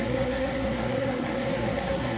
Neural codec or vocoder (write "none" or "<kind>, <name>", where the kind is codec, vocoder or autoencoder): codec, SNAC